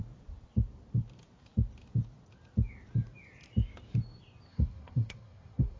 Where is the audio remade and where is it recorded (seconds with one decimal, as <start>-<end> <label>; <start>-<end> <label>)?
0.0-4.5 recorded; 4.5-5.8 remade